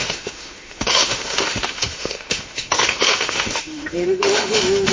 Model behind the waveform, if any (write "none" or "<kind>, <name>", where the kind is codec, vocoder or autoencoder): autoencoder, DAC-VAE